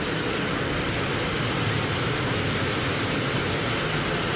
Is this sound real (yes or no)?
yes